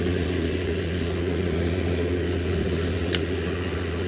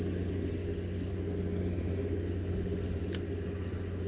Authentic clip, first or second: second